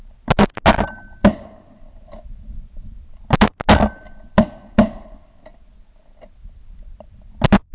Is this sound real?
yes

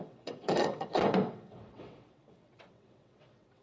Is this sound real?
no